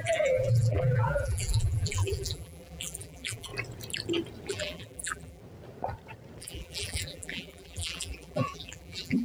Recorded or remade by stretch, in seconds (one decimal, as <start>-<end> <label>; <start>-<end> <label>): 0.0-3.5 remade; 3.5-4.5 recorded; 4.5-5.4 remade; 5.4-6.4 recorded; 6.4-9.2 remade